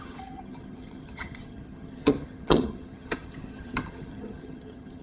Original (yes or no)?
no